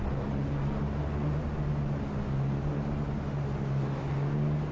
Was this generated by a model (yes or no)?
no